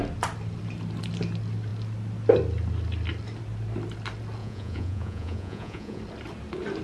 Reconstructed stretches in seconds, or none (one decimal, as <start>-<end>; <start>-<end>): 4.4-6.0